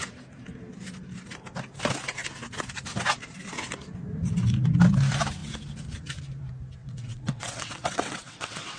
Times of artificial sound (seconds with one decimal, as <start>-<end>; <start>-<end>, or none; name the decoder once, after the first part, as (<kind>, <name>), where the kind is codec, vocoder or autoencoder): 6.8-8.8 (vocoder, WaveNeXt)